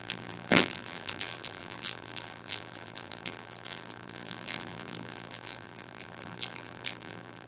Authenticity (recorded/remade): remade